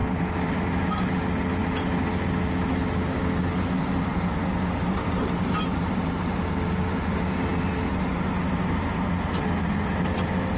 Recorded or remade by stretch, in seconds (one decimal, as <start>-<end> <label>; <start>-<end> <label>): 0.0-10.6 recorded